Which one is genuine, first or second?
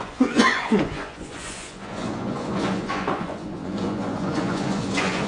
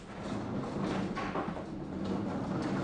second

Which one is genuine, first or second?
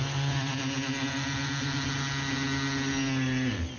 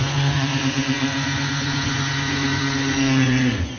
first